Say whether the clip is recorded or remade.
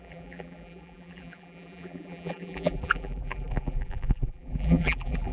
remade